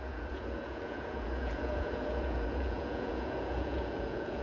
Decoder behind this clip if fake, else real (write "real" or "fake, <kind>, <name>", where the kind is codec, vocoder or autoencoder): fake, vocoder, Vocos